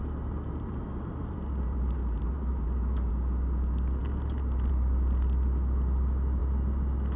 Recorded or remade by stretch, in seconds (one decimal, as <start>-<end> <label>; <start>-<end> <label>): 0.0-3.1 remade; 3.1-7.2 recorded